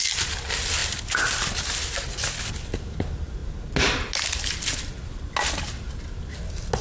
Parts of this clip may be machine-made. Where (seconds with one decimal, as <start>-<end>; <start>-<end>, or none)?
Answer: none